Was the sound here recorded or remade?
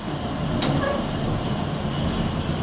recorded